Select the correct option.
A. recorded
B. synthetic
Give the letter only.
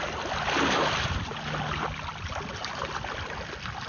A